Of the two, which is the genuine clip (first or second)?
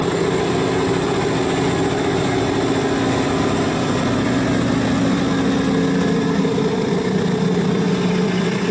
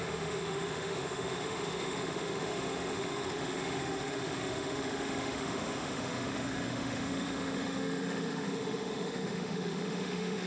first